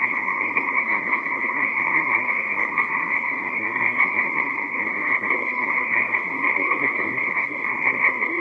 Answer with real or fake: fake